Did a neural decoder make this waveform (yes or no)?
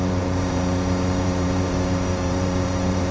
yes